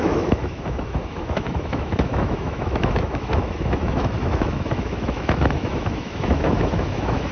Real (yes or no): no